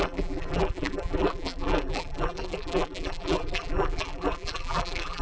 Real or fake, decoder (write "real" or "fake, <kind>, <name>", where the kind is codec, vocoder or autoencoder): fake, vocoder, BigVGAN v2